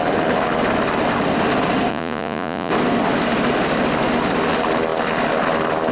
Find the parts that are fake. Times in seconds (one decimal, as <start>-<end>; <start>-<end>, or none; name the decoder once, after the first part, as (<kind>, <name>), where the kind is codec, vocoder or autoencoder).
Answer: 1.9-2.7 (vocoder, Vocos)